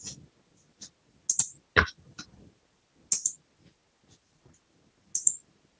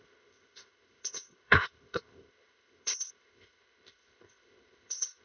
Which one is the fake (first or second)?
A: second